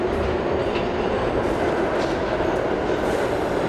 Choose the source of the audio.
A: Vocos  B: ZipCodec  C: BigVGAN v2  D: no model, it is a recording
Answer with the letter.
D